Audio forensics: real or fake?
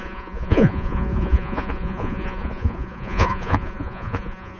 fake